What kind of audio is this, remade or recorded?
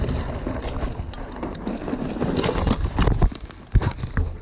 recorded